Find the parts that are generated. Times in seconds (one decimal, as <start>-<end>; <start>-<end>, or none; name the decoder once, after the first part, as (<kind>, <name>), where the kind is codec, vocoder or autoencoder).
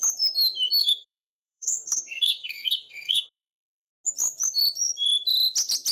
0.8-3.9 (codec, SNAC)